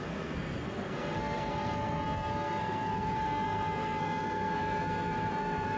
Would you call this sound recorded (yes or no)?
no